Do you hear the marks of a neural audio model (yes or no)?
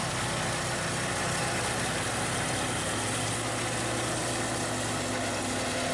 no